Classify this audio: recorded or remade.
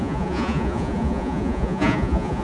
remade